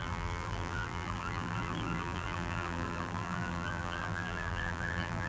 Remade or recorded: remade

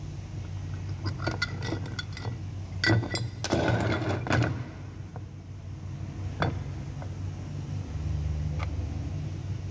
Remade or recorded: recorded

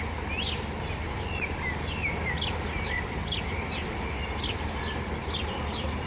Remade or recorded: recorded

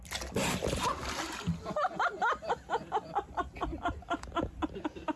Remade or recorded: recorded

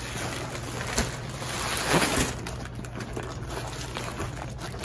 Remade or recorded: recorded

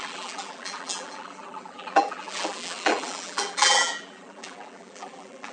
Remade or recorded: remade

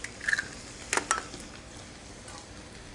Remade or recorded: recorded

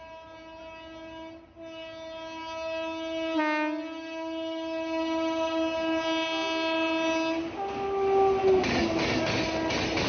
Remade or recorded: recorded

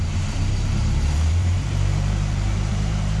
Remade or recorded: remade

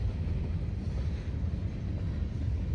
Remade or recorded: recorded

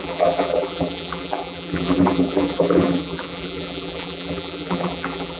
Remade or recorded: remade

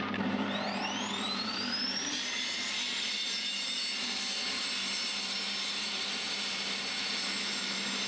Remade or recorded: remade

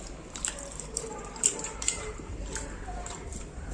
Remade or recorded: remade